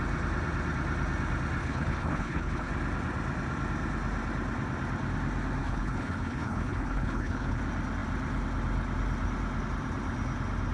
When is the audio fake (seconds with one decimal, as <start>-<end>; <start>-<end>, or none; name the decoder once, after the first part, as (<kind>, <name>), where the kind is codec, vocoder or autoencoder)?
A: 1.6-2.7 (codec, HILCodec); 5.6-7.6